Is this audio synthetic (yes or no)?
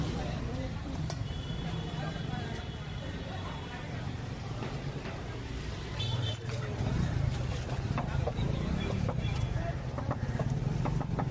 yes